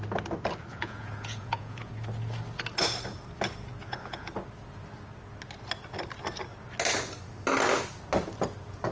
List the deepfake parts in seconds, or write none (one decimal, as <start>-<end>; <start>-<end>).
0.7-1.9; 3.8-4.3